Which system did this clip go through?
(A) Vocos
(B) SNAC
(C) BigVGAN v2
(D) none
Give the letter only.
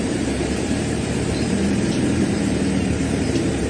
C